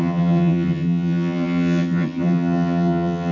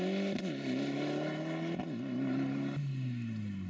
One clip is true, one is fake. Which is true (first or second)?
second